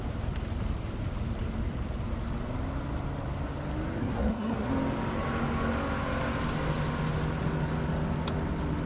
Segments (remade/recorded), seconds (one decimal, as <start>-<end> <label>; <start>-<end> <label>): 0.0-4.0 recorded; 4.0-4.7 remade; 4.7-8.9 recorded